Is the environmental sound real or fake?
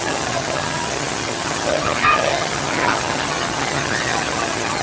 fake